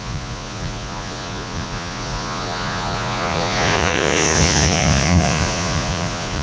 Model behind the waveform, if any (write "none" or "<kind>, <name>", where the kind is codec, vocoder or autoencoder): vocoder, Vocos